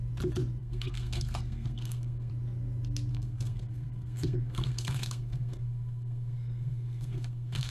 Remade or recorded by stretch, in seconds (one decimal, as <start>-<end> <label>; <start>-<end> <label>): 0.0-0.6 recorded; 0.6-2.3 remade; 2.3-3.1 recorded; 3.1-7.7 remade